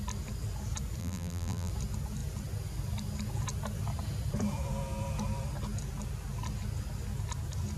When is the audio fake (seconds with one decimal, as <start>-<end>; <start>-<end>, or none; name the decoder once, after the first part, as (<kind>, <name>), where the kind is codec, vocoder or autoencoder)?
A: 1.0-1.7 (vocoder, BigVGAN v2)